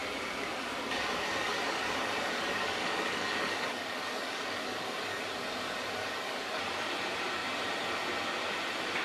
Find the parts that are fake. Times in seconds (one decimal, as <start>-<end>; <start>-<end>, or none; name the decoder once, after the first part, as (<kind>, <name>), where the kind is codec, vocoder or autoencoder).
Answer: 0.0-5.2 (codec, DAC); 6.0-6.6